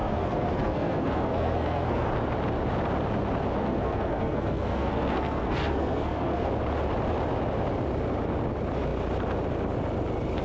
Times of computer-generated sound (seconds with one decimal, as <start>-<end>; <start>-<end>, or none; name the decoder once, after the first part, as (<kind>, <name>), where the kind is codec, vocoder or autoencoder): 0.0-2.1 (codec, SNAC); 3.6-6.5